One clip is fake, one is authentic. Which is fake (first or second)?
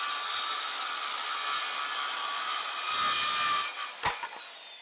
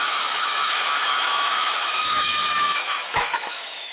second